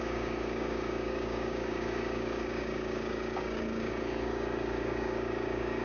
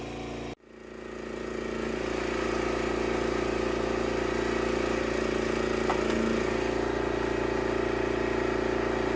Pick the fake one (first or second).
first